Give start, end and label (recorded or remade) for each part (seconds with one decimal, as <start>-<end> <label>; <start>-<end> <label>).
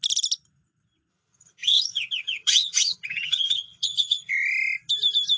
0.0-1.1 recorded; 1.1-4.3 remade; 4.3-5.4 recorded